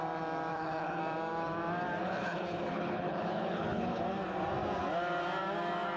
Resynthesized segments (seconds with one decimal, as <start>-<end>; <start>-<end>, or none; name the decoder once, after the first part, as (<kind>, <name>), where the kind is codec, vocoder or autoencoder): 0.5-1.0 (codec, HILCodec); 2.0-4.0